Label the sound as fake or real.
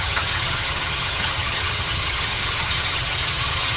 fake